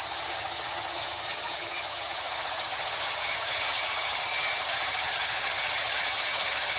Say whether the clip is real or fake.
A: fake